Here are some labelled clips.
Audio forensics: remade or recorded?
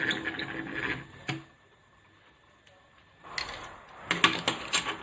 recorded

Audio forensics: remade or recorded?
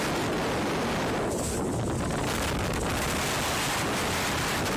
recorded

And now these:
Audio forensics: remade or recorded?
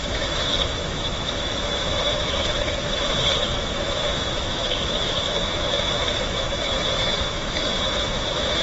remade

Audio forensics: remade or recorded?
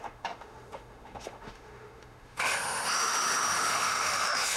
remade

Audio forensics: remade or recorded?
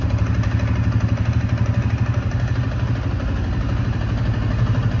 recorded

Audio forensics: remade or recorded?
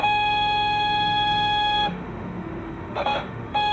remade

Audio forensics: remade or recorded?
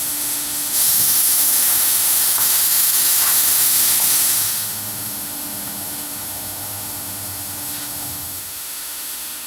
remade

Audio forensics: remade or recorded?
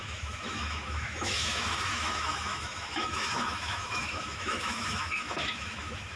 remade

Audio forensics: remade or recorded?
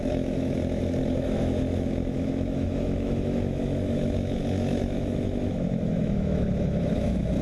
remade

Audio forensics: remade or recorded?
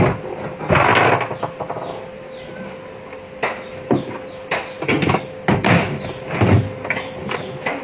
recorded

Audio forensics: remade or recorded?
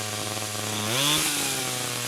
recorded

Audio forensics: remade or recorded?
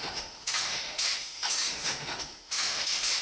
remade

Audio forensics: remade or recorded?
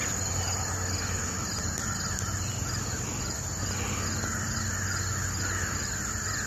recorded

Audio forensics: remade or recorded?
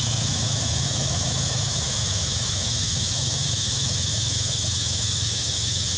remade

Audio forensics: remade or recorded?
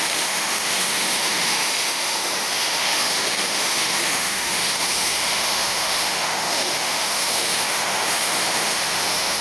remade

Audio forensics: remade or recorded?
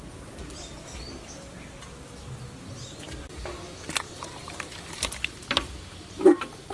recorded